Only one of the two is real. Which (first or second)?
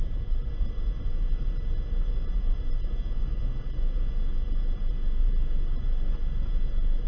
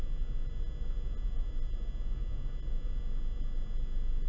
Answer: second